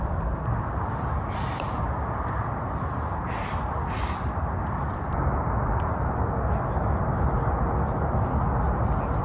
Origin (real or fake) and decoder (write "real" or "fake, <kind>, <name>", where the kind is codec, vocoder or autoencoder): real